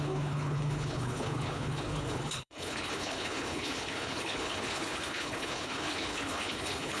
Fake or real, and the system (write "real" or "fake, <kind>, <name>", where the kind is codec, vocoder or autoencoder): fake, codec, HILCodec